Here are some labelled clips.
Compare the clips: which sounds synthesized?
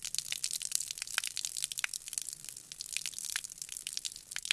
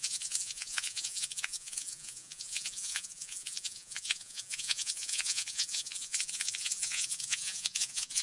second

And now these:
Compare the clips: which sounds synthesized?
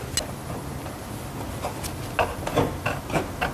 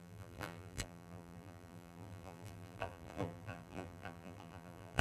second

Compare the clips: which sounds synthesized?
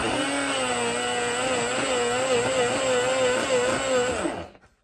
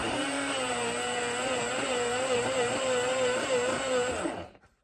second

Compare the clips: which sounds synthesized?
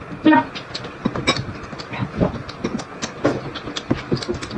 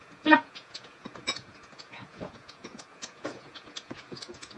second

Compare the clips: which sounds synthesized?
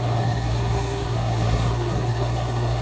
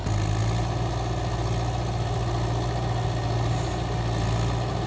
first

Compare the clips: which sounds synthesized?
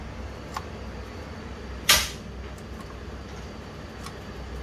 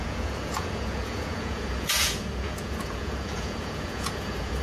second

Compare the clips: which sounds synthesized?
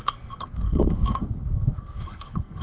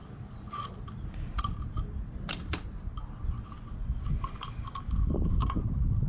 first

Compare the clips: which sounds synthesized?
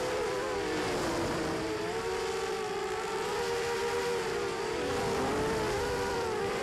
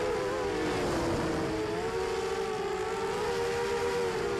first